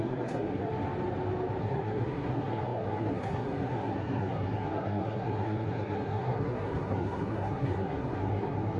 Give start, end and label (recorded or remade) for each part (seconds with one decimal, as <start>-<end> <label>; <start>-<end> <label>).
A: 0.0-0.6 remade; 0.6-1.6 recorded; 1.6-8.8 remade